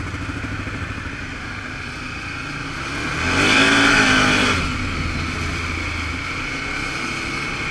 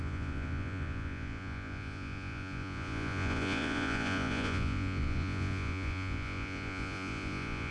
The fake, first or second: second